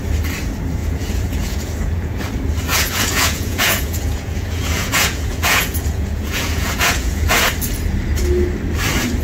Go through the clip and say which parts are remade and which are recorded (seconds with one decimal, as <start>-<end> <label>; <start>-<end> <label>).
0.0-0.8 recorded; 0.8-2.2 remade; 2.2-2.7 recorded; 2.7-7.5 remade; 7.5-9.2 recorded